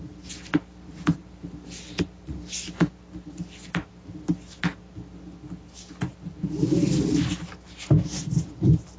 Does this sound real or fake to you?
real